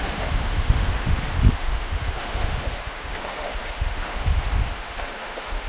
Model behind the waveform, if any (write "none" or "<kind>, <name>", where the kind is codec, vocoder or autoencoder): autoencoder, DAC-VAE